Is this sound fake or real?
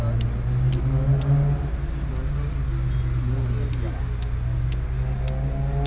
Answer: real